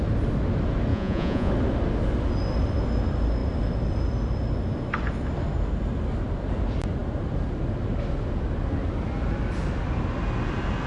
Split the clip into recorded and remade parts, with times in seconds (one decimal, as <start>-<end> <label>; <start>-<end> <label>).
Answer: 0.0-0.9 recorded; 0.9-1.5 remade; 1.5-10.9 recorded